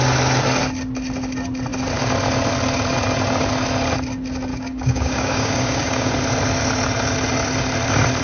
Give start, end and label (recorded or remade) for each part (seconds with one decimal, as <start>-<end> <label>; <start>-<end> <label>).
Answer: 0.0-4.5 recorded; 4.5-6.1 remade; 6.1-8.2 recorded